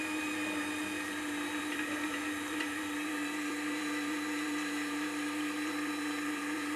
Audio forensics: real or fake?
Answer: fake